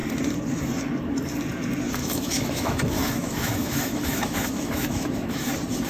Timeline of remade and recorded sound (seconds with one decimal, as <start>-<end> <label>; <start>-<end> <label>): 0.0-2.0 recorded; 2.0-5.5 remade; 5.5-5.9 recorded